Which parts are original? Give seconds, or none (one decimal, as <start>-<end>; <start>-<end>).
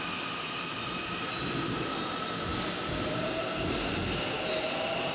0.0-5.1